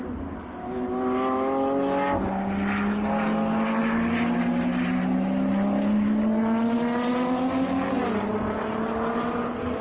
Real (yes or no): yes